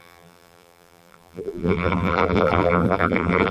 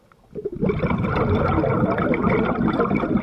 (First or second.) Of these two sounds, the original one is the second